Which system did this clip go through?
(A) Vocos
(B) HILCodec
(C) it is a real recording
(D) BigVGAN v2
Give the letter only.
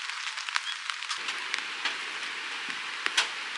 C